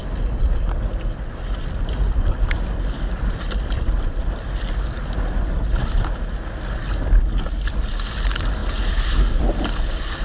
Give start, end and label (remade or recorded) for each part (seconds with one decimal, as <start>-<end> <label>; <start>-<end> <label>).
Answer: 0.0-10.2 recorded